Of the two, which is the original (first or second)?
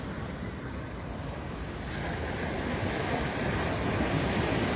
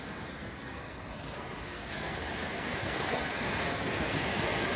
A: first